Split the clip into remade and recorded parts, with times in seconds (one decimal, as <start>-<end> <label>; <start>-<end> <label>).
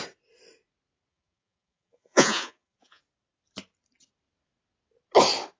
0.0-1.1 recorded; 1.1-3.0 remade; 3.0-5.6 recorded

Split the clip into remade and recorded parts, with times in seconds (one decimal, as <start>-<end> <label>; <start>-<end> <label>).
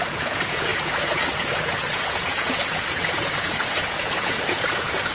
0.0-5.1 remade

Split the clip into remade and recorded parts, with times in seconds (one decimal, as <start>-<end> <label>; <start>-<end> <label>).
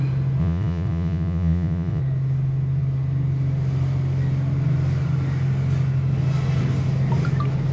0.0-0.4 recorded; 0.4-2.0 remade; 2.0-7.7 recorded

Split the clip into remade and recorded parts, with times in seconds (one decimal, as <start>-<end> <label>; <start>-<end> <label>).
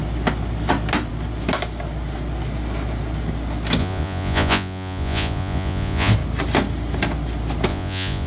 0.0-3.8 recorded; 3.8-6.1 remade; 6.1-7.7 recorded; 7.7-8.3 remade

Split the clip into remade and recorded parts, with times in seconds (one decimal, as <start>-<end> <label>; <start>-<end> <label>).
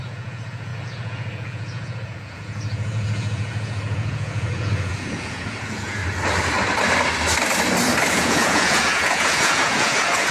0.0-6.0 remade; 6.0-8.1 recorded; 8.1-10.3 remade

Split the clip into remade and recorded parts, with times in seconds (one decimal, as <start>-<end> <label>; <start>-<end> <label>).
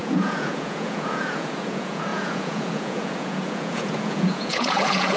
0.0-5.2 remade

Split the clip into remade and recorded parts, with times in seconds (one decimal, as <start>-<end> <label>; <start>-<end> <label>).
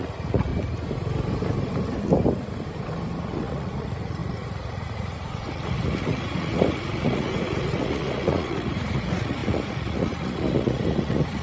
0.0-0.5 remade; 0.5-3.4 recorded; 3.4-11.4 remade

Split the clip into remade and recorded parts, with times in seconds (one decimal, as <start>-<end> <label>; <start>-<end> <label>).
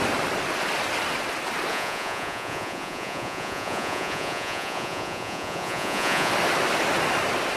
0.0-1.7 recorded; 1.7-6.3 remade; 6.3-7.6 recorded